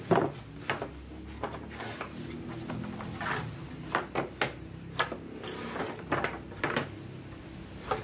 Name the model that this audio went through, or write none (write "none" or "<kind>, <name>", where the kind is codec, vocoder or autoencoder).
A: none